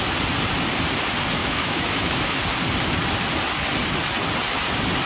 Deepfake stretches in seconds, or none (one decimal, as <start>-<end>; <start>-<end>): 1.4-2.4